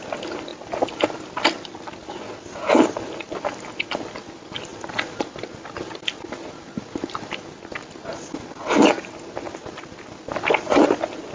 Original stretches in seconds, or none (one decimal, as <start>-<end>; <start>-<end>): 0.0-11.3